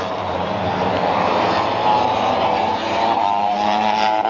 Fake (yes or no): yes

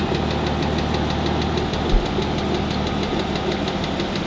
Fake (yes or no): no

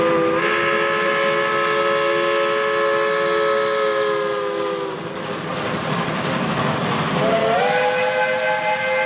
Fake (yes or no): no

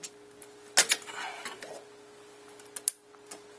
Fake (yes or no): no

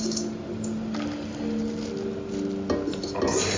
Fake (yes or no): no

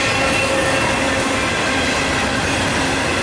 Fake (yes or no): no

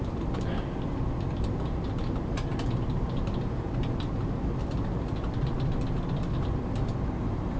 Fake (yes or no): no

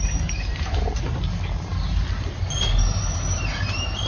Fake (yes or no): no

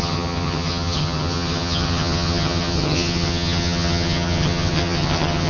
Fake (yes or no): yes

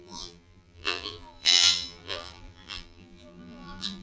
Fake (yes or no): yes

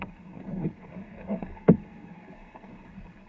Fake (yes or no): yes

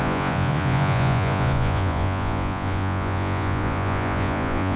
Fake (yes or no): yes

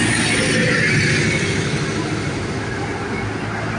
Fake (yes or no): no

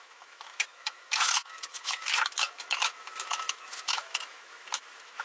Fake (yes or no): yes